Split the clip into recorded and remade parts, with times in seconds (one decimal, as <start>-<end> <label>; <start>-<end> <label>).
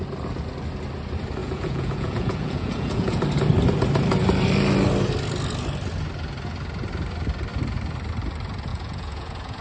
0.0-1.4 recorded; 1.4-3.2 remade; 3.2-8.7 recorded; 8.7-9.6 remade